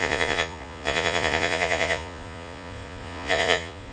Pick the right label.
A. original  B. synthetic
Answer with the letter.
B